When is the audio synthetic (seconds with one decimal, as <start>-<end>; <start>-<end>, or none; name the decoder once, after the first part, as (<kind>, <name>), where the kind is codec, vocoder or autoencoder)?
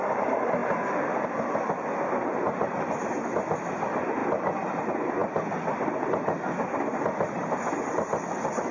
0.0-4.2 (vocoder, BigVGAN v2); 4.8-5.2